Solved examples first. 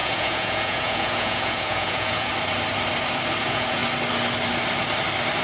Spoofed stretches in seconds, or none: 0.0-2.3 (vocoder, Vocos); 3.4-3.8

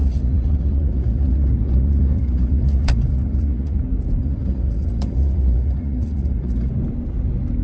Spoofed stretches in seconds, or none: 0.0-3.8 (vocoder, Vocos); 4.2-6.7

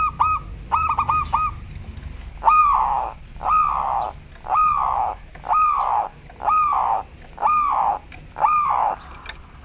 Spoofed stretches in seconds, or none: none